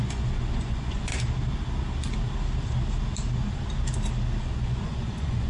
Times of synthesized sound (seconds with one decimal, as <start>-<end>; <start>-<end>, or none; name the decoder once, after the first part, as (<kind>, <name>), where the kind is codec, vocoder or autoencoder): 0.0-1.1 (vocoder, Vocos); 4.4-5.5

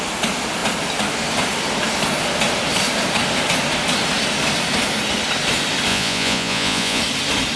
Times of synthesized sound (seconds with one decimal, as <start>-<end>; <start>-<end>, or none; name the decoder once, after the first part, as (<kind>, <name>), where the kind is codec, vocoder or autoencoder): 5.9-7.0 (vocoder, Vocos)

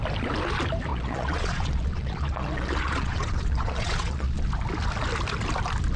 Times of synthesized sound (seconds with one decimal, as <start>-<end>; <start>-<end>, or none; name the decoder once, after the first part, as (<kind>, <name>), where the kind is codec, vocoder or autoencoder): 0.9-4.5 (vocoder, Vocos)

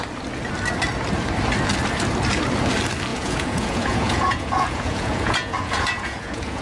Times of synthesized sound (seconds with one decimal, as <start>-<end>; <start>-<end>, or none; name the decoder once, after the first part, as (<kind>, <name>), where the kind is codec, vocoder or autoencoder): 3.1-6.6 (vocoder, Vocos)

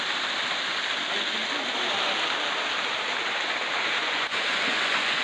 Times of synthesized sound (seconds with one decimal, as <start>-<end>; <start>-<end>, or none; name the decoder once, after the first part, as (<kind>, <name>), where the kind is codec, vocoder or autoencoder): 4.0-5.2 (vocoder, Vocos)

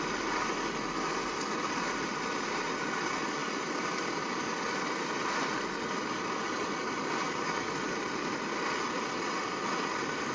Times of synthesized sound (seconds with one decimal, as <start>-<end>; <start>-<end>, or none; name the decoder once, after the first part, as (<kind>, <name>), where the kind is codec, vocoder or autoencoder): none

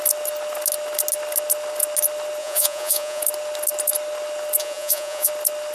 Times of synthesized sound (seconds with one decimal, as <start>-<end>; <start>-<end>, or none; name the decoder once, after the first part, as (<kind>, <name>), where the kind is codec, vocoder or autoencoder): 2.4-3.2 (vocoder, Vocos); 4.6-5.3

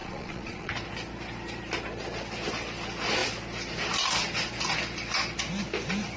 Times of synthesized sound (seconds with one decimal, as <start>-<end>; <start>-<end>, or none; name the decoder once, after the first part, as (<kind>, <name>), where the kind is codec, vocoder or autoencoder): 0.0-0.7 (vocoder, Vocos)